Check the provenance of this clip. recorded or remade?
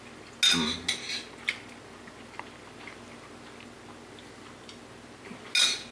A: recorded